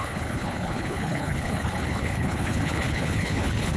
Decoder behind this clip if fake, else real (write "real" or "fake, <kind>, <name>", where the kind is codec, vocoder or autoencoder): fake, codec, HILCodec